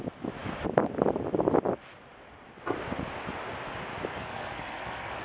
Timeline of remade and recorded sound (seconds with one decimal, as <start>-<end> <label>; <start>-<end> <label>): 0.0-4.1 recorded; 4.1-5.2 remade